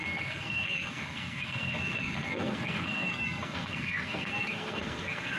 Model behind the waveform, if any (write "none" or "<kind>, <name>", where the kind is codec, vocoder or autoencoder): codec, SNAC